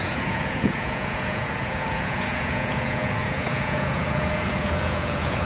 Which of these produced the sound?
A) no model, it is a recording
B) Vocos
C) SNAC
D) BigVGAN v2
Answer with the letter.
B